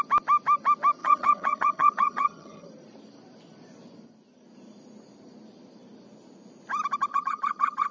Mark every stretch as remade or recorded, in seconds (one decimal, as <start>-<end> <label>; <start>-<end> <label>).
0.0-1.0 recorded; 1.0-2.7 remade; 2.7-7.1 recorded; 7.1-7.9 remade